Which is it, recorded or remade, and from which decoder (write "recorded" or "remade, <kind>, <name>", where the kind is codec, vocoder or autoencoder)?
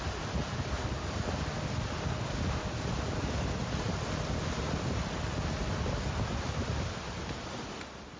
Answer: recorded